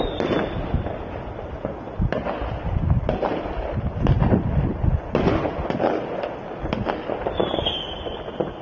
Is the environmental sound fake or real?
real